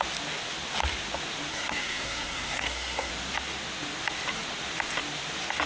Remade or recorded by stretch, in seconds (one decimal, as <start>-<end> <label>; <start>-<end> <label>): 0.0-1.5 recorded; 1.5-3.1 remade; 3.1-5.7 recorded